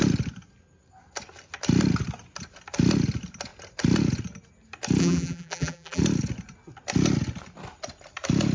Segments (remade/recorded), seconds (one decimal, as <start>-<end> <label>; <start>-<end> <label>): 0.0-5.0 recorded; 5.0-6.0 remade; 6.0-8.5 recorded